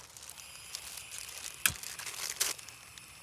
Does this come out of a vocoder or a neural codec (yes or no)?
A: no